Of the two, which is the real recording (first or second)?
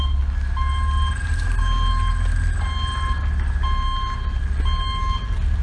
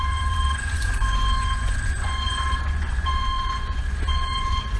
first